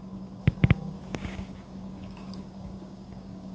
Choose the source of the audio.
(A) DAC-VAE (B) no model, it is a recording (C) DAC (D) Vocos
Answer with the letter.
C